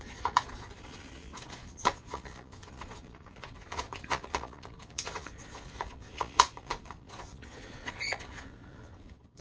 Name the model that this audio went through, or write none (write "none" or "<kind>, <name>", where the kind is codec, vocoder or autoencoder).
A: vocoder, Vocos